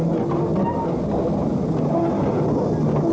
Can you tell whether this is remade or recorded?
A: recorded